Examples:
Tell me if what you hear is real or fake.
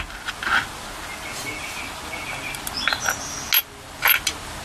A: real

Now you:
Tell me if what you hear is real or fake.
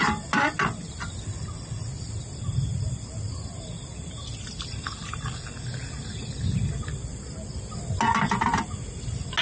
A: real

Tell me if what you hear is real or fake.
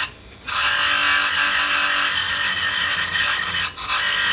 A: real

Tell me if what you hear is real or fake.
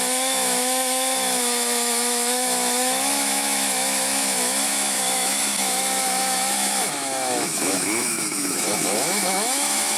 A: fake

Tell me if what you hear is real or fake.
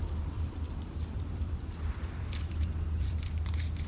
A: fake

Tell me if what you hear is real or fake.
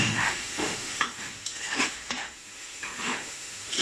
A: fake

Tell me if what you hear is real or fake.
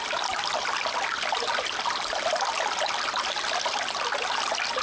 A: real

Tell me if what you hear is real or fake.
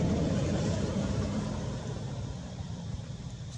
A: fake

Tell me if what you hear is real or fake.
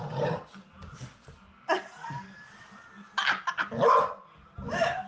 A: real